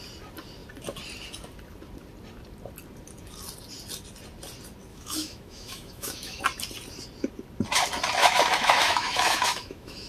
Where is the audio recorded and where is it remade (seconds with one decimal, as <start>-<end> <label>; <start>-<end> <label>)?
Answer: 0.0-4.9 recorded; 4.9-6.4 remade; 6.4-8.2 recorded; 8.2-10.1 remade

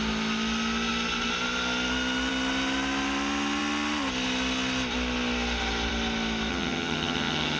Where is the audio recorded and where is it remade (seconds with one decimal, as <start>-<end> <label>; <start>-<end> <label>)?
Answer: 0.0-6.5 recorded; 6.5-7.6 remade